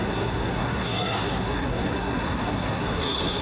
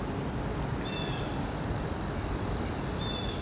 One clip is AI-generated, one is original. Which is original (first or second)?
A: second